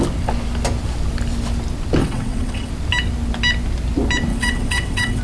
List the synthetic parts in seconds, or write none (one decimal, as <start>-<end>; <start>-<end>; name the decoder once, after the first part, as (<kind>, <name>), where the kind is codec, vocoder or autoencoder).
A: 2.0-2.7 (vocoder, WaveNeXt); 4.3-5.2